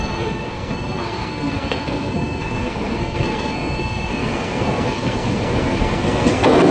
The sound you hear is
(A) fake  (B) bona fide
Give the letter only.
A